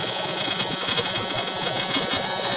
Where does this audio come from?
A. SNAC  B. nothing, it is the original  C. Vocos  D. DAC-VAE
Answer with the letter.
C